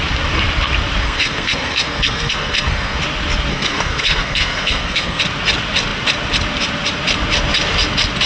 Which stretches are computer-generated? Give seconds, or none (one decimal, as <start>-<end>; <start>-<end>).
1.0-3.0; 3.5-5.2